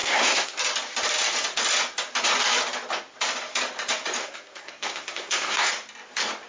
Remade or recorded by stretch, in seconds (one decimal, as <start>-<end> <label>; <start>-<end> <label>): 0.0-0.6 remade; 0.6-4.2 recorded; 4.2-5.7 remade; 5.7-6.5 recorded

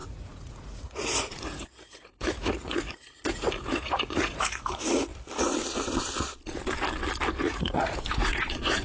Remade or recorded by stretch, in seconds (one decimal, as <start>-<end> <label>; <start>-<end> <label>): 0.0-5.1 remade; 5.1-7.4 recorded; 7.4-8.8 remade